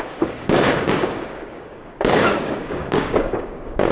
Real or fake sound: fake